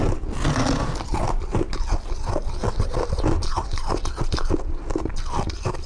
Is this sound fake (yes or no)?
no